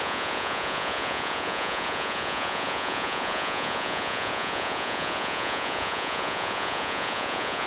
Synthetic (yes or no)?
yes